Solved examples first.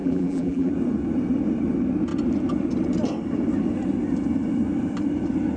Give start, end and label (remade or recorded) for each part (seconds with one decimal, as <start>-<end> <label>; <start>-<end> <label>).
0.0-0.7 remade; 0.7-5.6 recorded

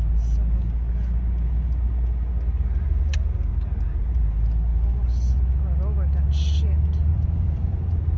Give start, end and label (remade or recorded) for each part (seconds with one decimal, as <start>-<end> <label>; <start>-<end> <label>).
0.0-3.5 recorded; 3.5-4.2 remade; 4.2-7.1 recorded; 7.1-8.2 remade

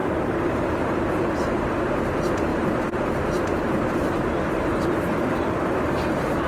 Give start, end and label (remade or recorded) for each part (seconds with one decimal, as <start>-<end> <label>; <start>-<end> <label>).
0.0-2.5 recorded; 2.5-6.5 remade

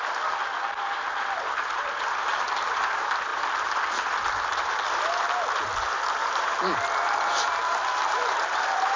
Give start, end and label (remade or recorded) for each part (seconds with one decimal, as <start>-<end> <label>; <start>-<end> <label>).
0.0-6.2 recorded; 6.2-9.0 remade

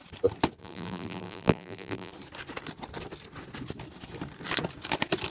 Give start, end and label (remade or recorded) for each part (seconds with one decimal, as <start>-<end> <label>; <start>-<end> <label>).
0.0-0.6 recorded; 0.6-2.1 remade; 2.1-5.3 recorded